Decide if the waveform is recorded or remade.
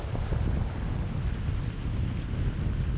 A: recorded